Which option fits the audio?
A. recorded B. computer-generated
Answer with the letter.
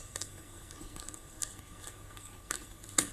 B